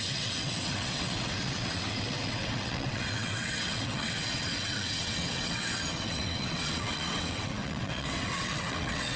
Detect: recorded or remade remade